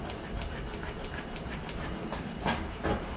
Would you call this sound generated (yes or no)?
no